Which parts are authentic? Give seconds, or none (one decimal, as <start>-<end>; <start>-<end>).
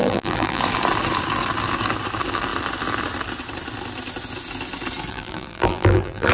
0.6-5.1